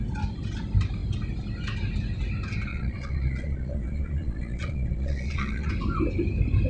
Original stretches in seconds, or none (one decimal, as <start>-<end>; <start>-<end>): 0.0-2.7; 5.7-6.7